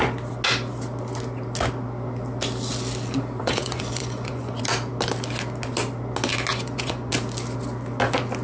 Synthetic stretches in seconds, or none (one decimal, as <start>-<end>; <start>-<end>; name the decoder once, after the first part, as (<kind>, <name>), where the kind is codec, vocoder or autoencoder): 3.4-4.6 (vocoder, Vocos); 6.5-7.1